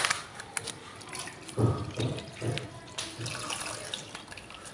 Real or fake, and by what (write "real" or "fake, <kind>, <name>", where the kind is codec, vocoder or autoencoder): real